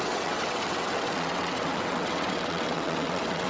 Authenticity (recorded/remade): remade